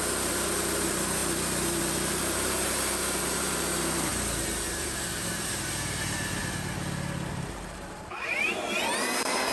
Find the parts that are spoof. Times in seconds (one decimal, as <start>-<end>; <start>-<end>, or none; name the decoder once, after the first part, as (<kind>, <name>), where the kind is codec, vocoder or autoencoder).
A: 0.0-4.1 (vocoder, BigVGAN v2); 4.7-6.4; 7.3-9.5